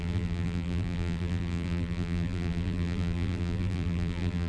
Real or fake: fake